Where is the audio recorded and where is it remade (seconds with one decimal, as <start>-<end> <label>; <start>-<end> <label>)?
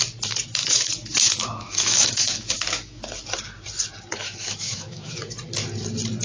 0.0-0.6 recorded; 0.6-3.0 remade; 3.0-4.2 recorded; 4.2-5.2 remade; 5.2-6.2 recorded